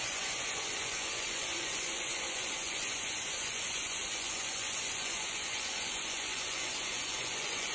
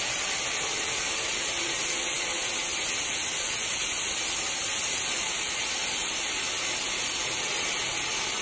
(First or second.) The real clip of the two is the second